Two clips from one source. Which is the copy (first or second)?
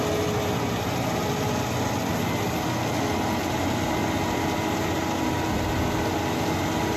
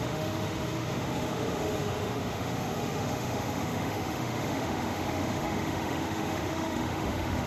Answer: second